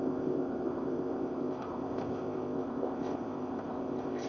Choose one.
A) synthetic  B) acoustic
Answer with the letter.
A